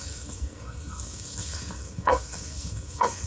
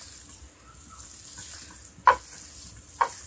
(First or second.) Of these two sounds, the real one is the second